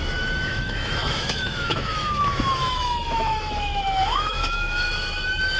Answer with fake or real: fake